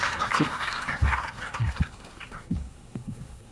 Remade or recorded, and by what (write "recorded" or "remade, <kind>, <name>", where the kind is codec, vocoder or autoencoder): remade, codec, SNAC